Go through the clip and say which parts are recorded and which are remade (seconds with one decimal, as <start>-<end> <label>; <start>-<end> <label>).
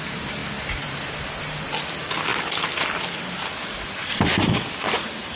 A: 0.0-5.4 recorded